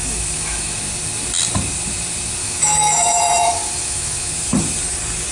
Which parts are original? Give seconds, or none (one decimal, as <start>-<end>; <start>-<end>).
0.8-2.4; 4.3-5.3